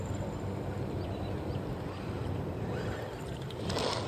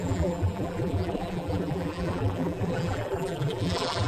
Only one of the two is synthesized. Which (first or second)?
second